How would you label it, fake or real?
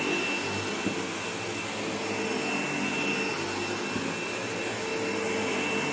real